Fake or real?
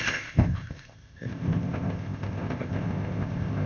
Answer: fake